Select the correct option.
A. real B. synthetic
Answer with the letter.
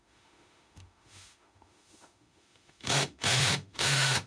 B